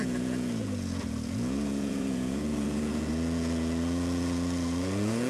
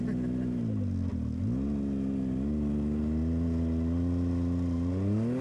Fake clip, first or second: first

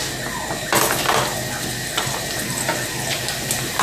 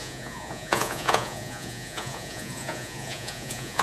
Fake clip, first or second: second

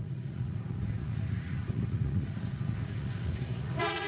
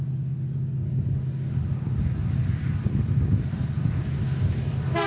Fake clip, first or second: first